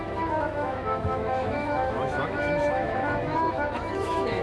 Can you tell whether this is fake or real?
fake